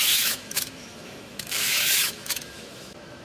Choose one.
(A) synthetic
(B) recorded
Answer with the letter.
A